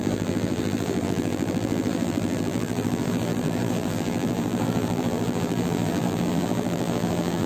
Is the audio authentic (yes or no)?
no